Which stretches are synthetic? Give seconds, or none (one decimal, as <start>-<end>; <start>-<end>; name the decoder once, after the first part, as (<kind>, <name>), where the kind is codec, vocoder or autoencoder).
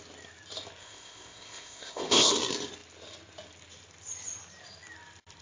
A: 0.8-2.3 (codec, ZipCodec)